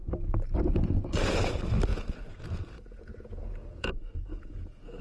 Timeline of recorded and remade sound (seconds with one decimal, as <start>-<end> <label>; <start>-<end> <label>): 0.0-1.9 recorded; 1.9-5.0 remade